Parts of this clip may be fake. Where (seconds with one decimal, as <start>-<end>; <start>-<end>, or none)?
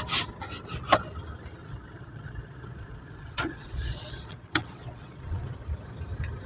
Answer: 1.6-5.5